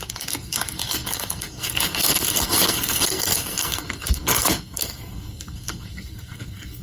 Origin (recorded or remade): remade